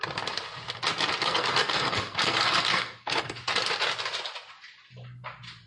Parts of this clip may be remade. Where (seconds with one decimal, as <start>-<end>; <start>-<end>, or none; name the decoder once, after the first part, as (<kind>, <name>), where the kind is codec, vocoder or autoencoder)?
1.2-3.4 (codec, SNAC)